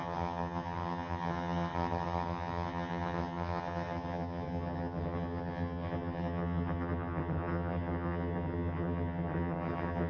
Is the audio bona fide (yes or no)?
no